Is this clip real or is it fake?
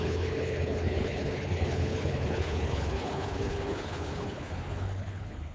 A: fake